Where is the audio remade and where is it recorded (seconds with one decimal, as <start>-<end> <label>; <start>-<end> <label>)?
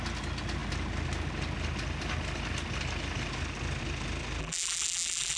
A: 0.0-4.4 recorded; 4.4-5.4 remade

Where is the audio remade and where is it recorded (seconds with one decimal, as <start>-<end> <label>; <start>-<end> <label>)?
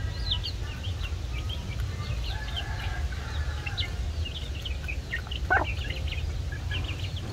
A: 0.0-7.3 recorded